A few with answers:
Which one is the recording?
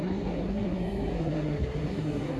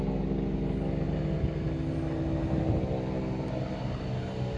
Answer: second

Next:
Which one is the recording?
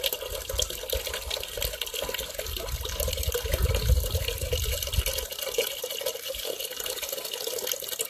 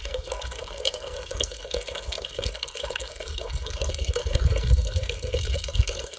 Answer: first